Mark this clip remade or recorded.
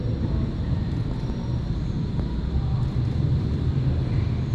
recorded